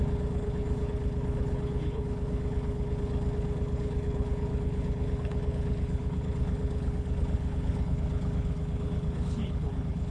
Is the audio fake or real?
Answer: fake